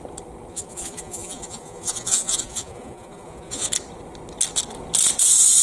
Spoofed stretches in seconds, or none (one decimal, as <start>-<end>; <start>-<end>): 0.5-3.7